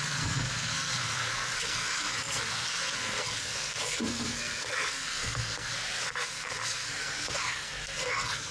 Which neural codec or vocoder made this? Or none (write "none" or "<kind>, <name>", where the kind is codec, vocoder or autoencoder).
codec, SNAC